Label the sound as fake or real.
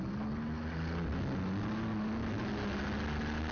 real